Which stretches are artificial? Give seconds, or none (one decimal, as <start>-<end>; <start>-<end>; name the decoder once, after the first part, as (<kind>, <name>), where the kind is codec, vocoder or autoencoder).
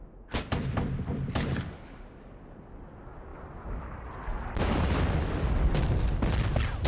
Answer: none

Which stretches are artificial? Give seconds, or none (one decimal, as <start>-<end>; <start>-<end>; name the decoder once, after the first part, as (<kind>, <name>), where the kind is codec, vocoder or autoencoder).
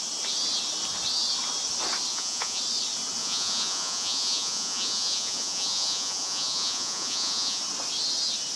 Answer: 2.1-2.6 (vocoder, Vocos); 3.2-7.6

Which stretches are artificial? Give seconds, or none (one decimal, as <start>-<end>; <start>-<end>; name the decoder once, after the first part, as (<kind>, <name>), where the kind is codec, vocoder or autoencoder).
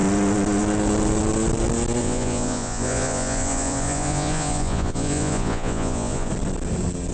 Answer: 2.0-6.3 (vocoder, Vocos)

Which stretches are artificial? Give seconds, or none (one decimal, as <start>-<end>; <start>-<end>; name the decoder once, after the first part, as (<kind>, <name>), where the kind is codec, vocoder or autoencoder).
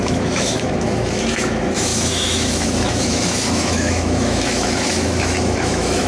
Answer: 0.0-6.1 (autoencoder, DAC-VAE)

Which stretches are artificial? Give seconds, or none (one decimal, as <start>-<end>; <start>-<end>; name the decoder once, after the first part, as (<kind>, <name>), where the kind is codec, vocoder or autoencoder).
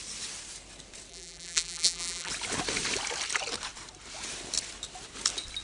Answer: 1.1-2.3 (vocoder, BigVGAN v2)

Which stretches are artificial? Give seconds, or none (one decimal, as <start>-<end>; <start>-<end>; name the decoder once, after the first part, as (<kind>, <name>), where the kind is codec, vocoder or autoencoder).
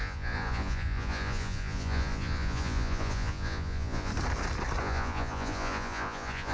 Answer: 0.0-4.1 (vocoder, Vocos); 4.8-6.5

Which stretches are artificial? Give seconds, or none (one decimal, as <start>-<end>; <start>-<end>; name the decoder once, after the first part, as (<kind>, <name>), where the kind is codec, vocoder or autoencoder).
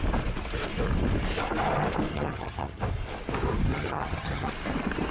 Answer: 2.1-2.8 (vocoder, HiFi-GAN); 3.7-4.5